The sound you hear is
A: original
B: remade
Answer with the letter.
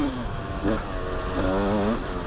A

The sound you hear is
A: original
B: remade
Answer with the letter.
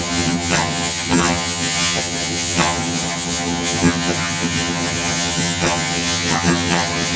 B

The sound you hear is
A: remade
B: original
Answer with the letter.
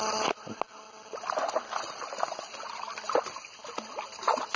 B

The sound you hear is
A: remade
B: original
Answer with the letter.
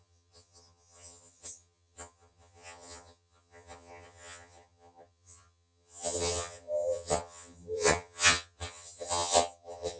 A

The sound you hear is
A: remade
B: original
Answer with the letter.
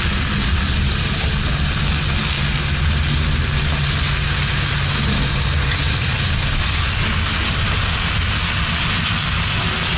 B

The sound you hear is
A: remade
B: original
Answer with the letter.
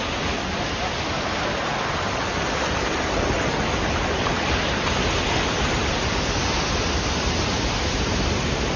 B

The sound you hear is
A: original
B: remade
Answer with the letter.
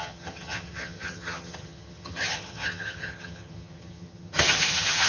B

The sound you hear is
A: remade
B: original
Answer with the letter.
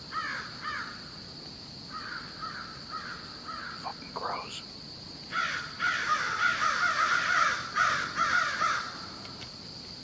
B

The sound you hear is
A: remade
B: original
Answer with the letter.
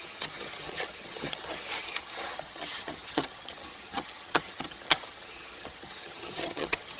A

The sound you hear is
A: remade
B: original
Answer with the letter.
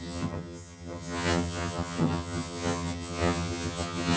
A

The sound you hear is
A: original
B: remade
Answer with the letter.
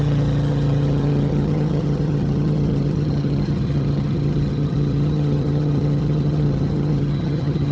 B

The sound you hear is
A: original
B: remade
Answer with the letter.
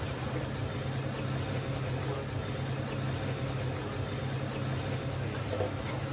A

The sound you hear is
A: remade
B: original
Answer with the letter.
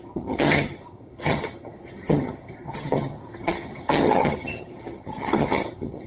A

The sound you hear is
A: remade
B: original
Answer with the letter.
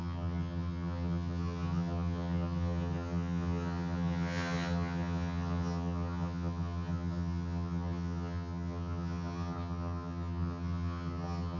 A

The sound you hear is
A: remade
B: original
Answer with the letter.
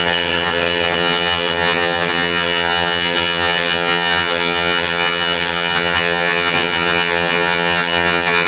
A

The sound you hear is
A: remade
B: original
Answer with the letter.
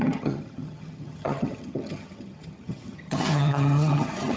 A